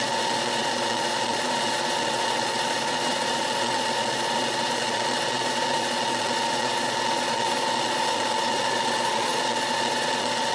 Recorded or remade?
remade